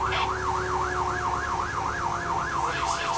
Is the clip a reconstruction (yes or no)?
no